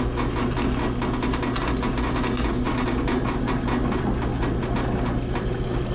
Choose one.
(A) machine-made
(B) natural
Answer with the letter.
B